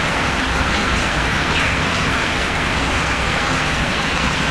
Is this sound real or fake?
fake